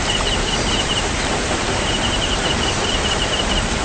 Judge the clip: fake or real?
fake